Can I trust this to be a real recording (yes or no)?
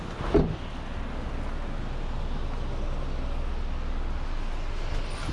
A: yes